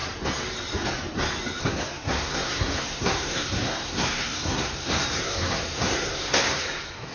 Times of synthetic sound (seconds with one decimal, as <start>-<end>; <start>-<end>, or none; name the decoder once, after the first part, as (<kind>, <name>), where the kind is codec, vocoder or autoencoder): 1.6-7.1 (codec, SNAC)